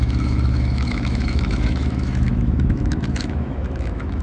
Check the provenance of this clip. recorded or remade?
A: remade